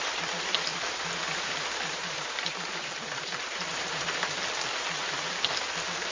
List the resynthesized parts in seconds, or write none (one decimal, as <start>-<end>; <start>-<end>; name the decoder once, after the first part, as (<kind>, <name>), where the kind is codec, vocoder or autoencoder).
0.7-4.4 (vocoder, BigVGAN v2)